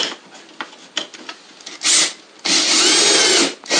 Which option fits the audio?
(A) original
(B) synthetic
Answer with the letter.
A